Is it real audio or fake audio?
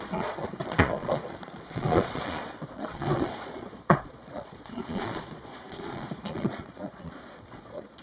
fake